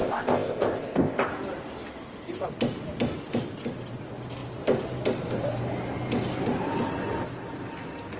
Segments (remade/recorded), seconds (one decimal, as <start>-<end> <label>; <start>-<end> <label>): 0.0-1.3 remade; 1.3-8.2 recorded